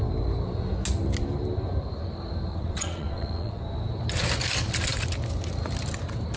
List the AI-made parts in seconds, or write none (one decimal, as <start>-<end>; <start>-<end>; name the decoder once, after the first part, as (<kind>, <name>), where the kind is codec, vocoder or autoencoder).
2.5-3.6 (vocoder, WaveNeXt)

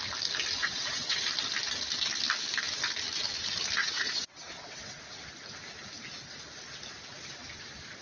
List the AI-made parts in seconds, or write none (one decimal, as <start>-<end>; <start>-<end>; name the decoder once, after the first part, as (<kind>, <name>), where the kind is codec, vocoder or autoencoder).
0.6-1.2 (vocoder, WaveNeXt); 3.8-5.0

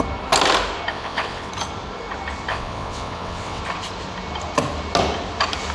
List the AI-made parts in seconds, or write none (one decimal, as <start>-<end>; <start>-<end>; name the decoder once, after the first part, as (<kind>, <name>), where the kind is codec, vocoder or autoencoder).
0.9-1.5 (vocoder, WaveNeXt); 2.5-3.6